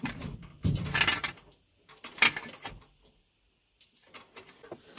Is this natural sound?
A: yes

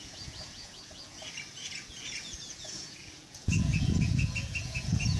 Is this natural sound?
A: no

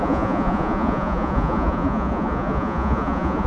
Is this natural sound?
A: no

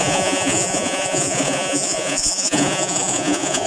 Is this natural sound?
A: no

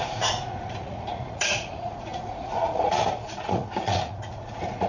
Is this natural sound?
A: no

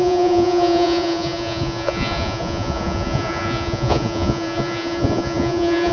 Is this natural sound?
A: no